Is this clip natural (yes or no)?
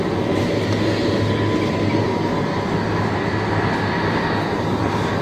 yes